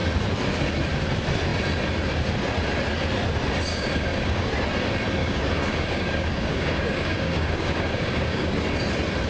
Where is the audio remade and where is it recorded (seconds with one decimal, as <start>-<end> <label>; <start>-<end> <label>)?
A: 0.0-3.7 recorded; 3.7-4.5 remade; 4.5-5.2 recorded; 5.2-8.5 remade; 8.5-9.3 recorded